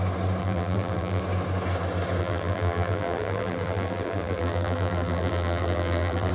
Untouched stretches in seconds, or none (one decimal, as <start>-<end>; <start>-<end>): 0.0-0.4; 1.2-2.2